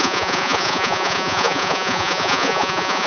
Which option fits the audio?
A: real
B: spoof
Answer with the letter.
B